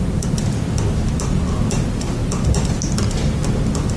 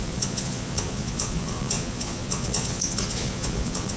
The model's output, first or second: second